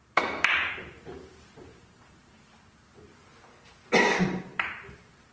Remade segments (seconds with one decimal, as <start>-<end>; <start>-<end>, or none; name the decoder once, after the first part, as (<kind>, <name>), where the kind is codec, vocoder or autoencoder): 0.0-2.9 (vocoder, BigVGAN v2); 4.2-5.3